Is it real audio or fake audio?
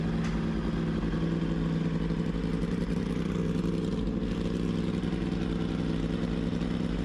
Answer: real